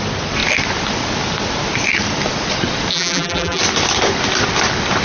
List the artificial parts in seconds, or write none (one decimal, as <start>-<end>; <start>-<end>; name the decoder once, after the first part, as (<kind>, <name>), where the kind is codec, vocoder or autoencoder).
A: 2.9-3.6 (vocoder, BigVGAN v2)